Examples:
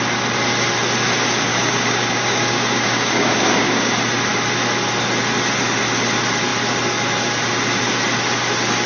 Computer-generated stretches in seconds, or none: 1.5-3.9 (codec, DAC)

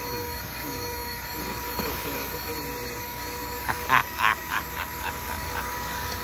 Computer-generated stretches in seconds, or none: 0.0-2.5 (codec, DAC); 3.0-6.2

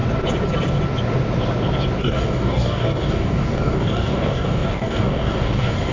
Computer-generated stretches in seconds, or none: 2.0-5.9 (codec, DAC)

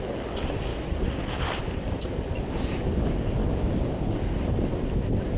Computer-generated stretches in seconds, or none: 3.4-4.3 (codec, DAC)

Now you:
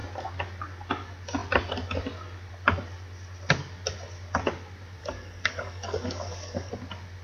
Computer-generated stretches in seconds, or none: 5.0-6.7 (codec, DAC)

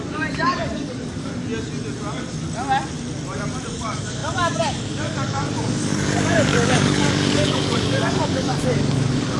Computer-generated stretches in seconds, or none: 0.0-1.3 (codec, DAC); 3.7-9.4

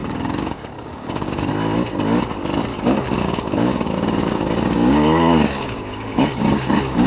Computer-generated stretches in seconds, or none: 0.0-1.5 (codec, DAC); 2.7-7.1